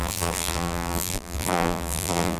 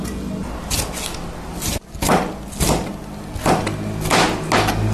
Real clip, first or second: second